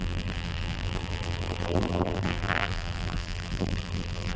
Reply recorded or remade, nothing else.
remade